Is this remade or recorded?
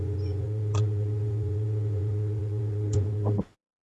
remade